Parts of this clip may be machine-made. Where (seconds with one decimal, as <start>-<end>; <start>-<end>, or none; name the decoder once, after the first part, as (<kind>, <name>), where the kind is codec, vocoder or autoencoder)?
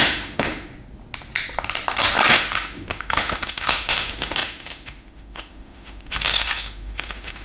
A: 0.0-0.7 (autoencoder, DAC-VAE); 2.3-7.4